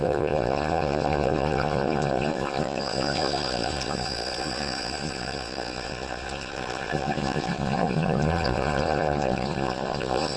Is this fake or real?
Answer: fake